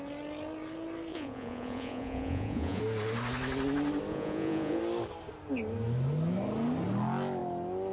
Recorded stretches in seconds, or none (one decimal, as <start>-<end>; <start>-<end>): 0.0-1.1; 2.8-4.1; 4.8-7.9